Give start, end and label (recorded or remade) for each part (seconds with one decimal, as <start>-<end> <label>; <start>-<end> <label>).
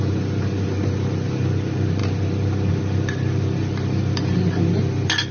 0.0-5.3 recorded